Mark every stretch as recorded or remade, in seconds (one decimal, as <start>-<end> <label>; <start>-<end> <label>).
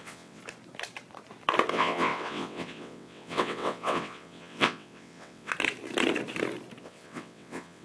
0.0-0.4 remade; 0.4-1.7 recorded; 1.7-5.5 remade; 5.5-6.8 recorded; 6.8-7.8 remade